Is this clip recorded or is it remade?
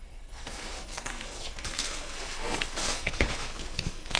remade